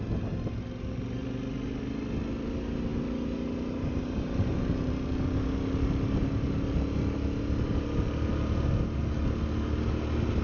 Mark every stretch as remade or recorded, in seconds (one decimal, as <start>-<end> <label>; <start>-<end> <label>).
0.0-10.4 recorded